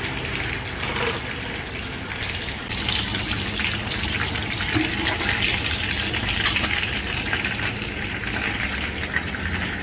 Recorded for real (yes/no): yes